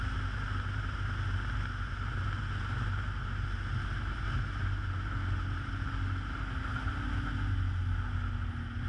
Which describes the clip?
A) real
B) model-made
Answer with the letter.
A